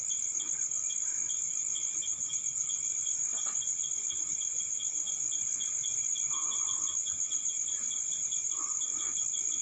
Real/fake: real